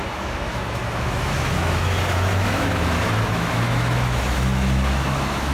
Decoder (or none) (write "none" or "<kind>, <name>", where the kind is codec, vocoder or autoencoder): autoencoder, DAC-VAE